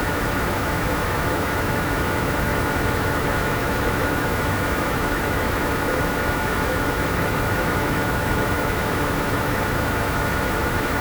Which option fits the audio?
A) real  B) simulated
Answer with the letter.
B